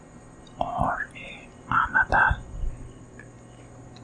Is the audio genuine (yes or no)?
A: yes